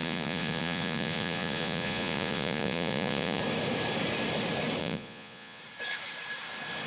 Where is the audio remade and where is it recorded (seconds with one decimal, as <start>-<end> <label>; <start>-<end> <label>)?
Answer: 0.0-3.4 remade; 3.4-4.8 recorded; 4.8-5.6 remade; 5.6-6.9 recorded